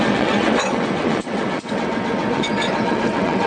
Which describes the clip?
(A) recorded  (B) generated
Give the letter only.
B